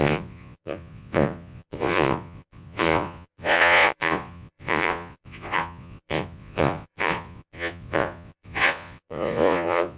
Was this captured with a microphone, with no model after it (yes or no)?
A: no